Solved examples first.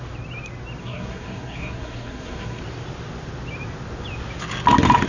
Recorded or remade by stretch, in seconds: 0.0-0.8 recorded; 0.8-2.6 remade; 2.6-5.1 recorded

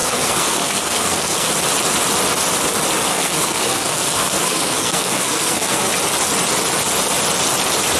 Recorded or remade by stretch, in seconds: 0.0-1.5 remade; 1.5-3.1 recorded; 3.1-5.9 remade; 5.9-8.0 recorded

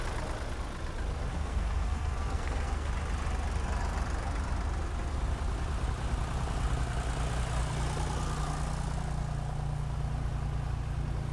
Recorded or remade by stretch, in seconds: 0.0-1.3 recorded; 1.3-2.9 remade; 2.9-11.3 recorded

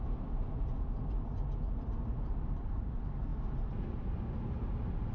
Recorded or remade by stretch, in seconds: 0.0-5.1 recorded

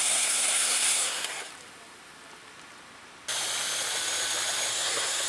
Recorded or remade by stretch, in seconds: 0.0-1.5 remade; 1.5-4.7 recorded; 4.7-5.3 remade

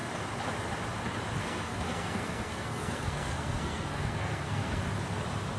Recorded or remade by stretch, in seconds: 0.0-1.4 recorded; 1.4-4.8 remade; 4.8-5.6 recorded